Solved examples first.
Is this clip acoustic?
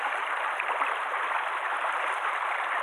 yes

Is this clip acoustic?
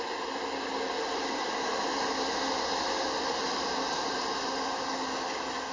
yes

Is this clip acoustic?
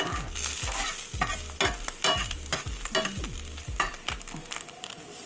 yes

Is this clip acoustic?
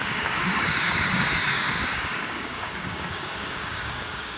no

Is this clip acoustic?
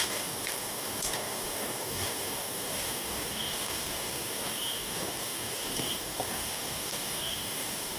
no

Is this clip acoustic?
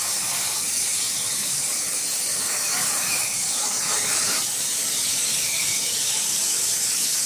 no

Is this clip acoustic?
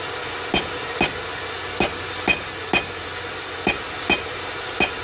yes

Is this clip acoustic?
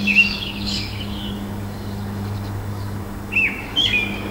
no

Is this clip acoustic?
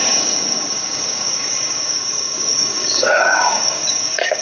no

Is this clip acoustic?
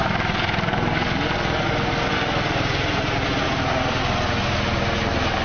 yes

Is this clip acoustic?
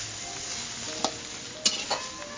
yes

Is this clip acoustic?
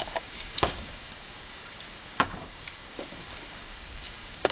no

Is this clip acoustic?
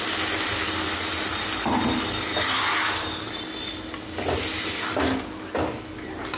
yes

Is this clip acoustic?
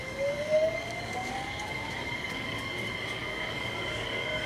no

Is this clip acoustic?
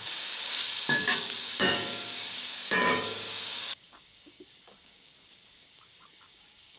no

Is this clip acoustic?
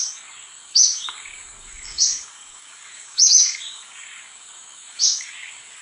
no